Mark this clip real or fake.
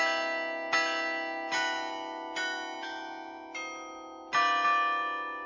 real